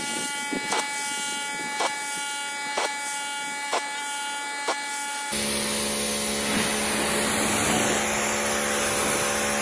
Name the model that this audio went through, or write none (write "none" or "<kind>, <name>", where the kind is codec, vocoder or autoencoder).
none